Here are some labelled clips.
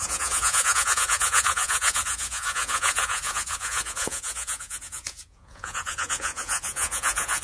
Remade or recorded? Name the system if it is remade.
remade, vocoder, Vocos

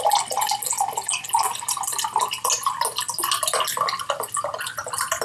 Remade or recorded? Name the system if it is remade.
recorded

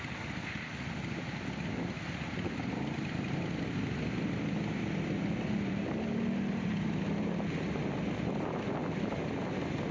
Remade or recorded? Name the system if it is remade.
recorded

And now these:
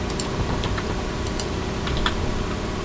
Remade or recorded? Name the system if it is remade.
remade, vocoder, BigVGAN v2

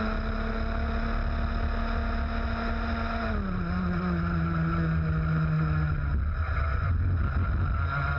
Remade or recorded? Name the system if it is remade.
recorded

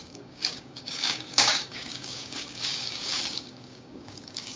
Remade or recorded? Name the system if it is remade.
remade, codec, DAC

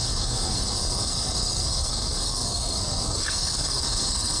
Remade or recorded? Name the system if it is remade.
remade, codec, SNAC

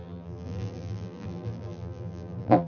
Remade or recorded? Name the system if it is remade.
remade, vocoder, BigVGAN v2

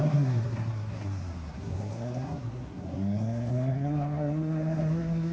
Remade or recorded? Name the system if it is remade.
remade, codec, SNAC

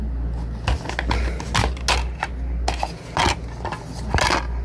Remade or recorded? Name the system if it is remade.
recorded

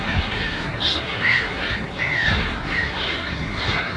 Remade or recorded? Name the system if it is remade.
remade, codec, SNAC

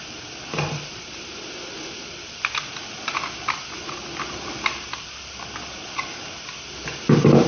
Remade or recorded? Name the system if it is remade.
recorded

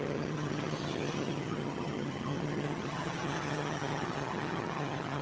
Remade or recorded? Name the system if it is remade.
remade, vocoder, HiFi-GAN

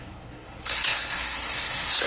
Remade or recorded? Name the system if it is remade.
remade, codec, SNAC